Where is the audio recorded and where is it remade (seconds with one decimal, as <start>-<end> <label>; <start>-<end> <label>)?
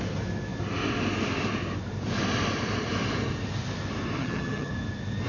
0.0-4.2 recorded; 4.2-4.7 remade; 4.7-5.3 recorded